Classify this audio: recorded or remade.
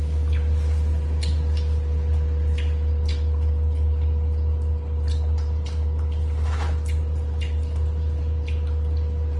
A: recorded